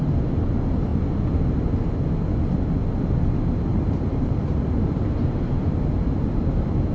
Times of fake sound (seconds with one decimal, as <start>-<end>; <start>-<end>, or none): 3.7-5.8